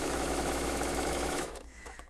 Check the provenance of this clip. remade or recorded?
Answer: remade